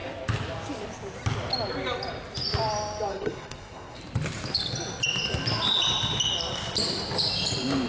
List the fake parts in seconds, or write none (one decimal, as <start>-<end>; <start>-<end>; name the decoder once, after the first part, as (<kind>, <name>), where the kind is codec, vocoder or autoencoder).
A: 3.1-4.0 (codec, SNAC)